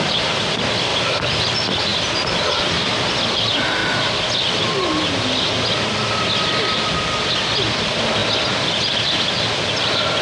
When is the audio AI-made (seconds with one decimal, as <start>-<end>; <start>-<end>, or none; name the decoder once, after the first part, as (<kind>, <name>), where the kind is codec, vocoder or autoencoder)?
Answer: 0.9-1.5 (vocoder, BigVGAN v2)